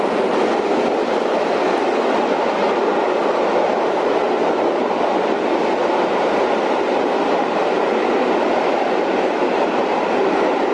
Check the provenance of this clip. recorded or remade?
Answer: recorded